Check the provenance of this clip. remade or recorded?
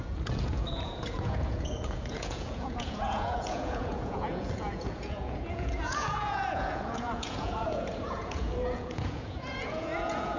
remade